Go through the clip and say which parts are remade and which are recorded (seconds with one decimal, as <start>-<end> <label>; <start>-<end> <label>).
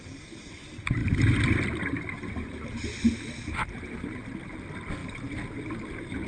0.0-6.3 recorded